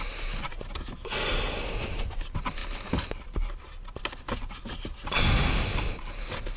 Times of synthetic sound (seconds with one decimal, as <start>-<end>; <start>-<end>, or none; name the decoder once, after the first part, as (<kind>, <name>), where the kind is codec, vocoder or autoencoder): none